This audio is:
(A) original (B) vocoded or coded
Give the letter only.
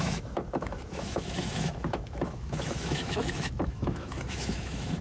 B